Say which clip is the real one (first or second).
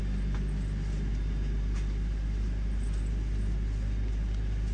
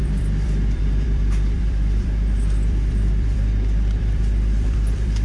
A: first